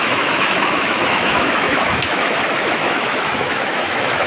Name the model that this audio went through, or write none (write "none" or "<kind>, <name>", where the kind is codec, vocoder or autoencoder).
autoencoder, DAC-VAE